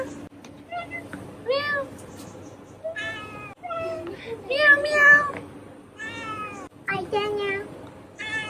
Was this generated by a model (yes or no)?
no